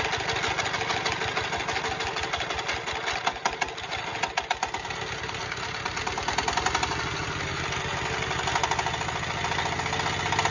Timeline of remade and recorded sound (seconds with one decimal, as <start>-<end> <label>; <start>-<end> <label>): 0.0-10.5 recorded